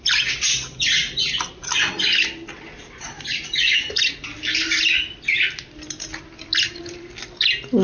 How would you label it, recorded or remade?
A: recorded